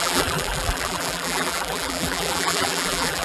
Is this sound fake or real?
fake